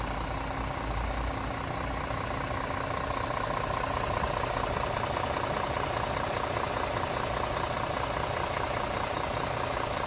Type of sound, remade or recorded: recorded